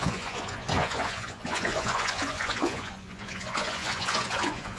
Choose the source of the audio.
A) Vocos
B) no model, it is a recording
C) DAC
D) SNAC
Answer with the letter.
A